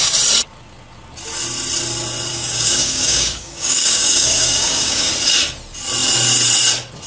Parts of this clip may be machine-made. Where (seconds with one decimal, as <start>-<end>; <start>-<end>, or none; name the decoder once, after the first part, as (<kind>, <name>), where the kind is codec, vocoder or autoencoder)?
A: 2.3-5.1 (codec, DAC)